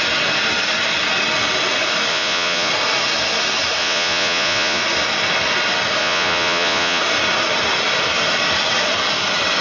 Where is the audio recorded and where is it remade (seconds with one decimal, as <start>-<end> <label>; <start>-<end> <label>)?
0.0-2.1 recorded; 2.1-2.7 remade; 2.7-3.8 recorded; 3.8-4.8 remade; 4.8-6.0 recorded; 6.0-7.0 remade; 7.0-9.6 recorded